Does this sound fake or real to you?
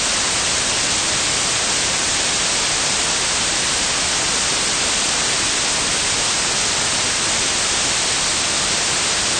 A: real